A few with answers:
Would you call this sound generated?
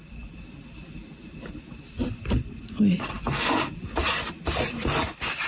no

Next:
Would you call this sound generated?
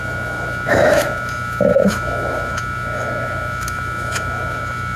yes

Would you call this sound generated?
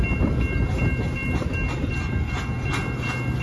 no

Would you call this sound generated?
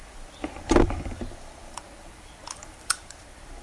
yes